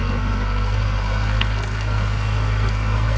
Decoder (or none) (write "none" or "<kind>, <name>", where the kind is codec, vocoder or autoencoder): codec, SNAC